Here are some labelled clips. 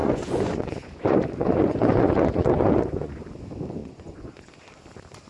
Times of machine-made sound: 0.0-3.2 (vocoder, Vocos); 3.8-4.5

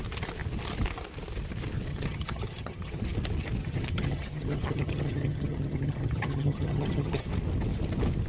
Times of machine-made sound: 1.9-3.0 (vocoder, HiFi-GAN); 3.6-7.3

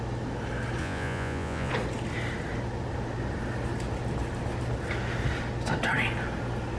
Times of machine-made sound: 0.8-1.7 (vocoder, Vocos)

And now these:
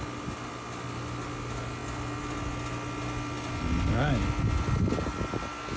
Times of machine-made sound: none